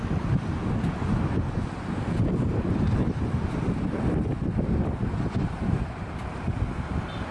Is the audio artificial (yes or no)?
no